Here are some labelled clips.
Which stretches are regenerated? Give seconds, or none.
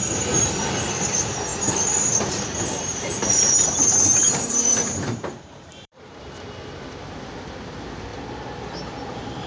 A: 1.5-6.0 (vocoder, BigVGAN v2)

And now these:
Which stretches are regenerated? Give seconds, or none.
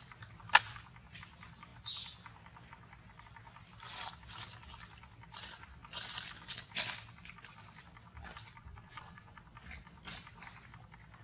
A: 8.6-9.4 (vocoder, Vocos)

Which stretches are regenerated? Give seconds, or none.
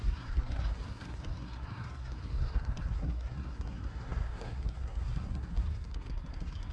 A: 0.0-6.7 (codec, SNAC)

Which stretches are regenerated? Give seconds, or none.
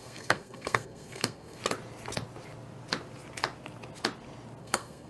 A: 0.0-1.6 (codec, SNAC); 4.6-5.1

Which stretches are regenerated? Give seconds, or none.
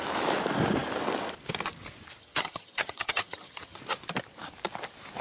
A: 2.2-3.8 (vocoder, HiFi-GAN)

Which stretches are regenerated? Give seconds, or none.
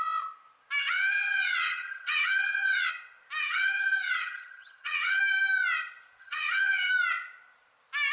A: 0.8-2.9 (vocoder, HiFi-GAN); 3.4-5.2; 6.2-6.9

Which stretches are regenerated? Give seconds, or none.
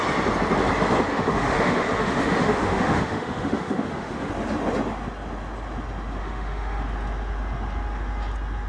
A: 1.1-4.3 (autoencoder, DAC-VAE); 6.2-6.8